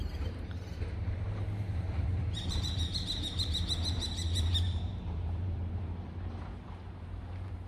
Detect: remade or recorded remade